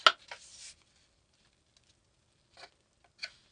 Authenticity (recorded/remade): recorded